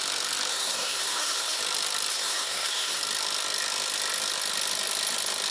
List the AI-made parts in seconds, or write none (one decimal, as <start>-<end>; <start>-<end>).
0.5-1.6; 2.1-3.0